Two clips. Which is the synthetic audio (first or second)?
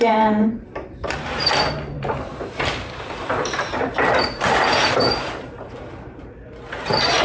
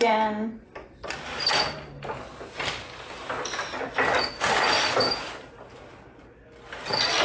first